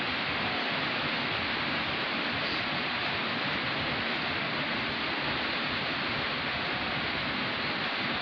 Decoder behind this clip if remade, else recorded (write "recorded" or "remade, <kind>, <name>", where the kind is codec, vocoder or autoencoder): recorded